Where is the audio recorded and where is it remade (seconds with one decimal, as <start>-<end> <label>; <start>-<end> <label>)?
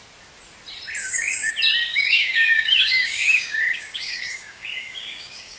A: 0.0-1.0 recorded; 1.0-1.5 remade; 1.5-1.9 recorded; 1.9-5.6 remade